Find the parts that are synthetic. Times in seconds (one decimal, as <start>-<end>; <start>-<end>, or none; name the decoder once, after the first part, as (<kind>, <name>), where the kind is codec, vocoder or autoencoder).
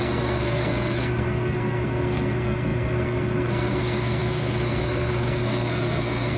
0.0-6.4 (codec, SNAC)